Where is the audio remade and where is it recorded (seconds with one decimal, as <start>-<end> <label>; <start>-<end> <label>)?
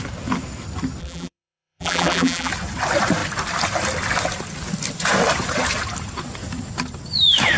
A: 0.0-1.0 recorded; 1.0-2.5 remade; 2.5-7.6 recorded